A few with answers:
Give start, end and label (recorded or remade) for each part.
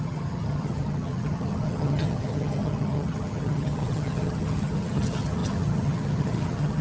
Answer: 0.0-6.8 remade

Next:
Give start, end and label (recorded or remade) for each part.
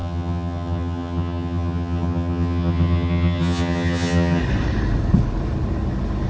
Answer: 0.0-4.4 remade; 4.4-6.3 recorded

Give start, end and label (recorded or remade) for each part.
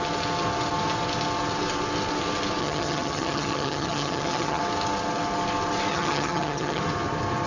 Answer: 0.0-2.6 recorded; 2.6-4.6 remade; 4.6-5.9 recorded; 5.9-6.8 remade; 6.8-7.5 recorded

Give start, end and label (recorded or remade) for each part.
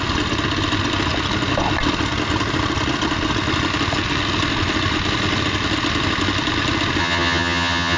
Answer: 0.0-7.0 recorded; 7.0-8.0 remade